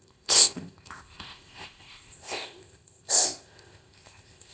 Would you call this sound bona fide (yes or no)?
no